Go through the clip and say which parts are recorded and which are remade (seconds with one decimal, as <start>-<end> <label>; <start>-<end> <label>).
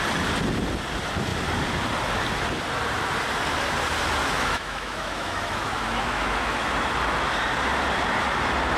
0.0-4.2 recorded; 4.2-6.7 remade; 6.7-8.8 recorded